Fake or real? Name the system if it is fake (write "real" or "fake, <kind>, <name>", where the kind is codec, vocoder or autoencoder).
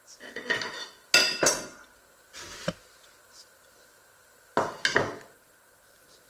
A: real